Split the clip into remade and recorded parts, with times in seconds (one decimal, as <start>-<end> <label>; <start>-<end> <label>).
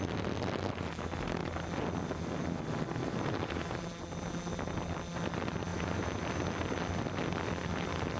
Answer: 0.0-3.0 recorded; 3.0-4.0 remade; 4.0-5.7 recorded; 5.7-6.3 remade; 6.3-8.2 recorded